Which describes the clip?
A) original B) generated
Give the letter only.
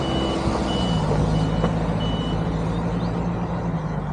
A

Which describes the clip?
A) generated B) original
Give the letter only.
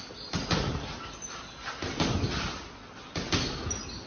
B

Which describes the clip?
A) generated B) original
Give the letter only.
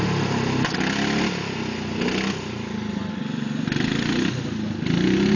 B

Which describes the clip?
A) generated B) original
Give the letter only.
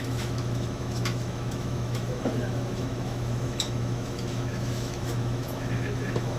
A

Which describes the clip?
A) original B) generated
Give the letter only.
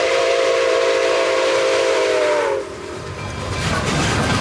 B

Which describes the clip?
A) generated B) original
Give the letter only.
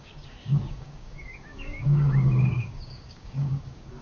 A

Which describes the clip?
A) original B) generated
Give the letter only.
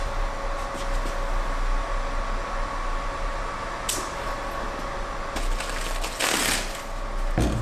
A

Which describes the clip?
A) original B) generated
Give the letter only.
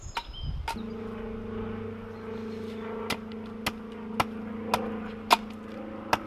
A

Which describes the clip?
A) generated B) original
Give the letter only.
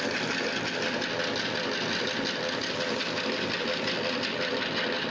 B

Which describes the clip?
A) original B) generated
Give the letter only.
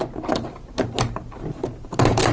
B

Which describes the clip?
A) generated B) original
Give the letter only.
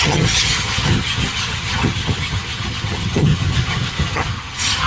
A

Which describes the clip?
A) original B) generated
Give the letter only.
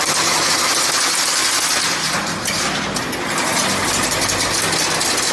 A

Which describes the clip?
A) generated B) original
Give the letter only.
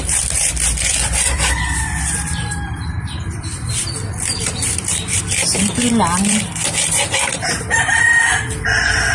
A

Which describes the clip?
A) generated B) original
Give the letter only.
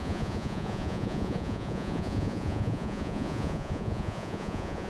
A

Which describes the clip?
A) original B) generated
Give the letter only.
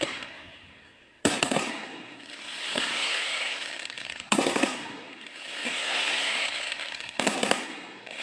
B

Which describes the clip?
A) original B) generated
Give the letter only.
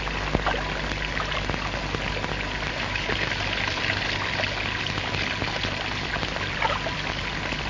A